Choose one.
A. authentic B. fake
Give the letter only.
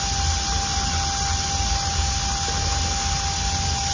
A